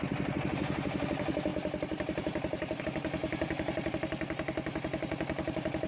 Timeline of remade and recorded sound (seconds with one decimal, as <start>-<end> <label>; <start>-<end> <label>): 0.0-3.2 recorded; 3.2-3.9 remade; 3.9-5.9 recorded